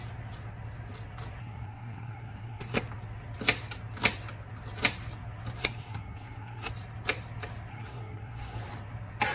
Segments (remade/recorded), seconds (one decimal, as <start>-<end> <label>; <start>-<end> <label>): 0.0-1.4 recorded; 1.4-2.8 remade; 2.8-5.6 recorded; 5.6-6.7 remade; 6.7-7.7 recorded; 7.7-8.6 remade; 8.6-9.3 recorded